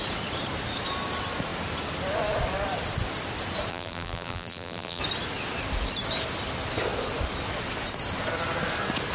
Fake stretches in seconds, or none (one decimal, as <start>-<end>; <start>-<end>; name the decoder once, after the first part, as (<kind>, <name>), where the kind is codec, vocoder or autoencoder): 3.7-5.0 (vocoder, BigVGAN v2)